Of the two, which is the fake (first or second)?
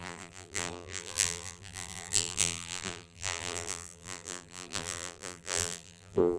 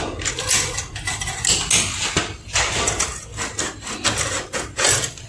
first